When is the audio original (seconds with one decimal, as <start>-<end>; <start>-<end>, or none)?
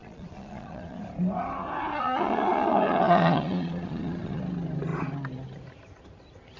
1.0-1.9; 4.4-6.6